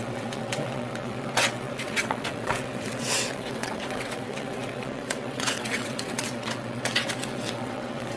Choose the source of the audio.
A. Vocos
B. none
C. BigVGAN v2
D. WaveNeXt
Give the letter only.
D